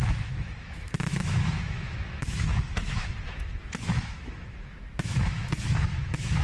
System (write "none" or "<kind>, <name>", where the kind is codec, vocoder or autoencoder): autoencoder, DAC-VAE